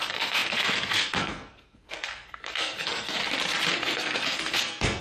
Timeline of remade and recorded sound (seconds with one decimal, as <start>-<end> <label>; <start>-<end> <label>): 0.0-3.2 remade; 3.2-3.7 recorded; 3.7-5.0 remade